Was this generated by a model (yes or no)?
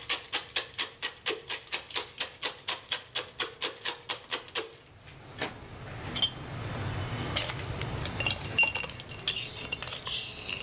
no